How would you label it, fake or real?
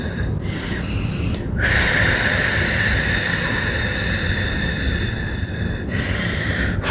real